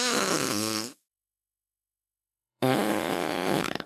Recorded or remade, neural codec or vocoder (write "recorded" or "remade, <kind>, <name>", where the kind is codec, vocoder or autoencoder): remade, autoencoder, DAC-VAE